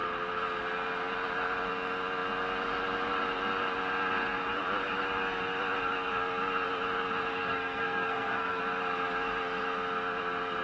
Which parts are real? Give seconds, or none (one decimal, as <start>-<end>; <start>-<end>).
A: 0.0-7.4; 8.6-10.6